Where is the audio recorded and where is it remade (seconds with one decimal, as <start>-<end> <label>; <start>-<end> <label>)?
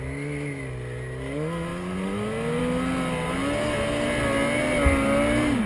0.0-5.7 recorded